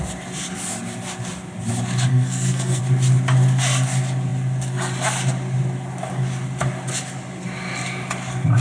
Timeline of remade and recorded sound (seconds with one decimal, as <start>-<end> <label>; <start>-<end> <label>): 0.0-2.1 recorded; 2.1-2.8 remade; 2.8-8.6 recorded